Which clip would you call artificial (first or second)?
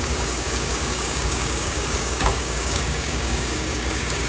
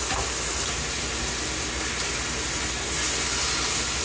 first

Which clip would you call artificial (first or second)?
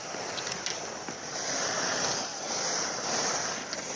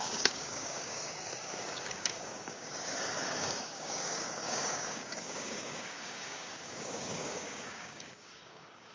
second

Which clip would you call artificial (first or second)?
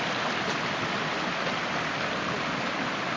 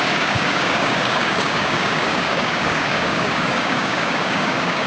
second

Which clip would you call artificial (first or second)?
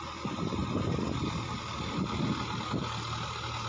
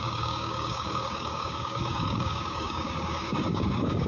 second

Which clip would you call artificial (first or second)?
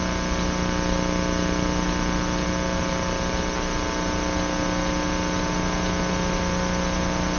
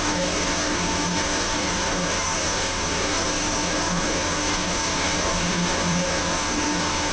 second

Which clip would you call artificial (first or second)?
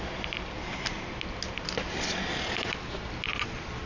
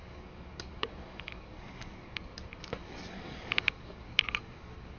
second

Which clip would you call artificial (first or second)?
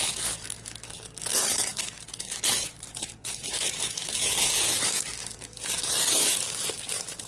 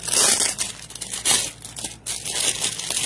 first